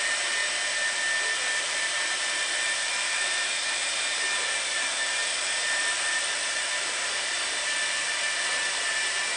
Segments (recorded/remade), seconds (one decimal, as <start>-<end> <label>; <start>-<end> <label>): 0.0-0.4 remade; 0.4-1.6 recorded; 1.6-9.4 remade